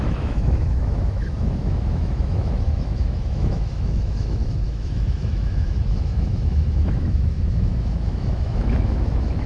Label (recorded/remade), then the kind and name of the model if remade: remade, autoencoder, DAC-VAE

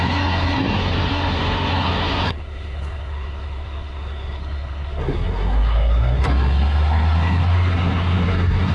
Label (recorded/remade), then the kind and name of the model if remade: remade, codec, SNAC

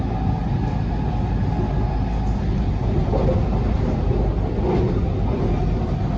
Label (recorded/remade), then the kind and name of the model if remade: recorded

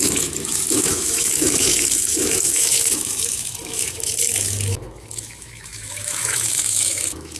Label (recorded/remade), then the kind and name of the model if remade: remade, autoencoder, DAC-VAE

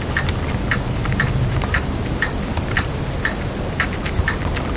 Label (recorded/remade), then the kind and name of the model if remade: recorded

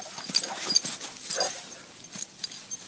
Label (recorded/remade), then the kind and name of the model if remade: recorded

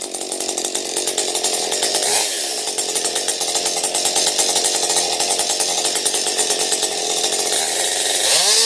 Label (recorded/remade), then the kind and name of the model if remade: recorded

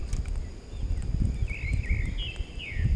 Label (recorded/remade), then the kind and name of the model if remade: recorded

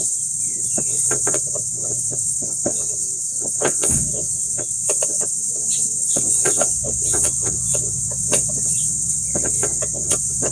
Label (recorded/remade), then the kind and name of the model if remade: remade, vocoder, WaveNeXt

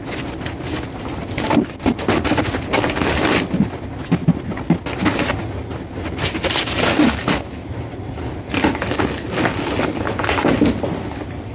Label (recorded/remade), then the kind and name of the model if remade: recorded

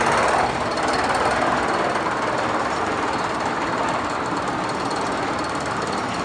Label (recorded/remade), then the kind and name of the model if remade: recorded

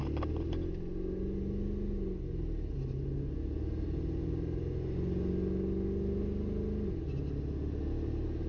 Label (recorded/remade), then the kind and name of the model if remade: recorded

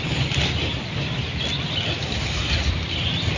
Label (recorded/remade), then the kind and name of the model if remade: recorded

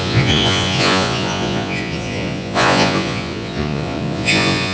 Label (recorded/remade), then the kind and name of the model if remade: remade, vocoder, Vocos